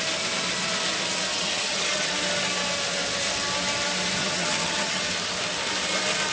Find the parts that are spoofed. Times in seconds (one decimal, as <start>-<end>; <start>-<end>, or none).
1.3-2.1; 4.2-5.0